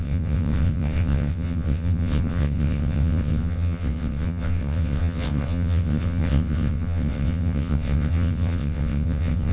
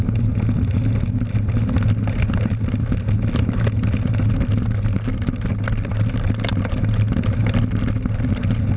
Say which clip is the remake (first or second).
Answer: first